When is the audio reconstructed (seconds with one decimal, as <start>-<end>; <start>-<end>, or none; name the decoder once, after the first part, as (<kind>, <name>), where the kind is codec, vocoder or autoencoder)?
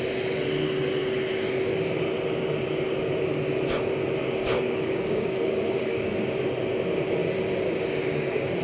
4.2-6.1 (codec, DAC)